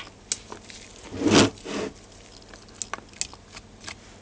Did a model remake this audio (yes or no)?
no